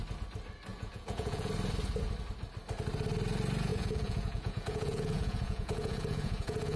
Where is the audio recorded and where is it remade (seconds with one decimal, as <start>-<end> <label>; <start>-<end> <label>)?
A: 0.0-0.7 recorded; 0.7-1.5 remade; 1.5-3.7 recorded; 3.7-6.8 remade